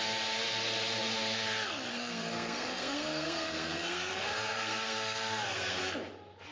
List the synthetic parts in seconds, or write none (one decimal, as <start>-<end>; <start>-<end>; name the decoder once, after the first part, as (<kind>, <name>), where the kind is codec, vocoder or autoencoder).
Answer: 1.9-5.8 (codec, SNAC)